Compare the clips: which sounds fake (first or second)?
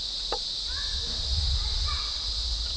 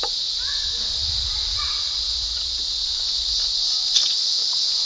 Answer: second